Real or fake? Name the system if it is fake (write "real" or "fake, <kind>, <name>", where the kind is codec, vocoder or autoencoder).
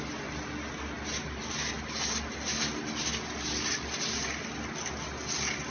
real